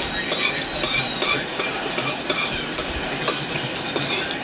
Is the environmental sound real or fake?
real